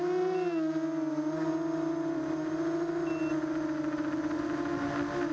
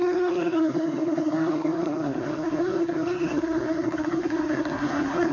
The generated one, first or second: second